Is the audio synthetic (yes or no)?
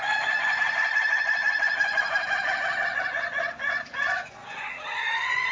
yes